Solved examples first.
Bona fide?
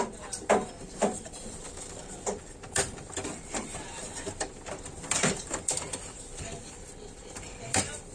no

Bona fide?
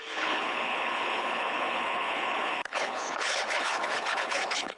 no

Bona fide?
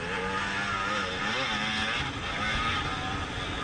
yes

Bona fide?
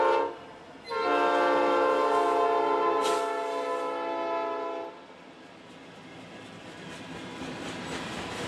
yes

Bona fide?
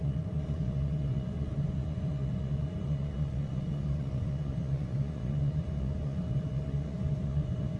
no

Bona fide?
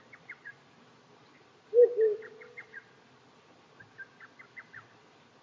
yes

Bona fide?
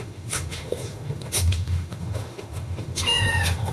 no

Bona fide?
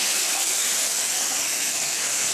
no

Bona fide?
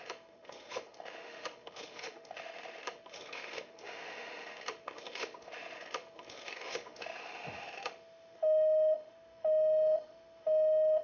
no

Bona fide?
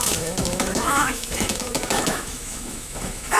no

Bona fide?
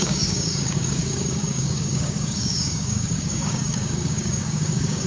no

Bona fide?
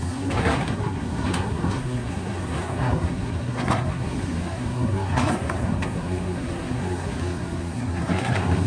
no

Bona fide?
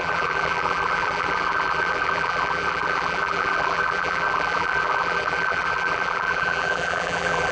no